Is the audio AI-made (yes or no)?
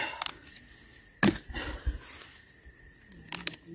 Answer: no